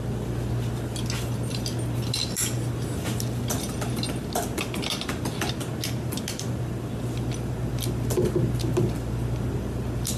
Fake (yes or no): no